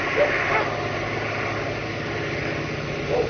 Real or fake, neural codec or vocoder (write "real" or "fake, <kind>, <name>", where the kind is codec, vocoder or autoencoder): real